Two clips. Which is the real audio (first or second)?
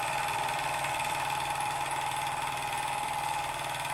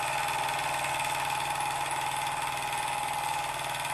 second